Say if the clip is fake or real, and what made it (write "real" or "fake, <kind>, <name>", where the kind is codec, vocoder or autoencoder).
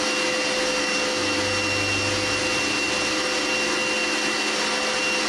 real